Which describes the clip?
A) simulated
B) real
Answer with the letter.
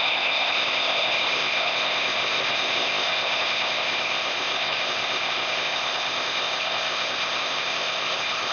A